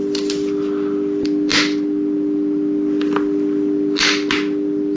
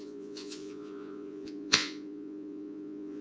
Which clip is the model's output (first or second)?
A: second